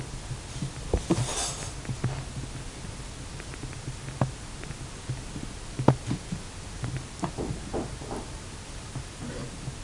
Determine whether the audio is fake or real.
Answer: real